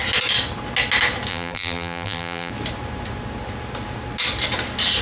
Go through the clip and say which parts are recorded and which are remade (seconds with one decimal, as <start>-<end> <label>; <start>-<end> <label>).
0.0-1.3 recorded; 1.3-2.5 remade; 2.5-5.0 recorded